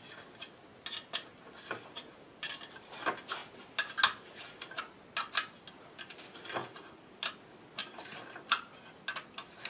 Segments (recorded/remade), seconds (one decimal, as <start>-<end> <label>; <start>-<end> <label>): 0.0-2.1 recorded; 2.1-2.7 remade; 2.7-6.6 recorded; 6.6-7.3 remade; 7.3-7.8 recorded; 7.8-8.8 remade; 8.8-9.7 recorded